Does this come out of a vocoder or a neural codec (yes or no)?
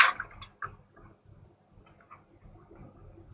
no